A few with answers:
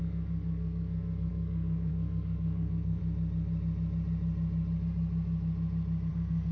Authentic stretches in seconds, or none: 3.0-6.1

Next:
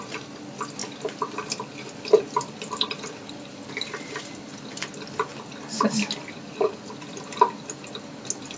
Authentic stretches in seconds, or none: 0.0-8.6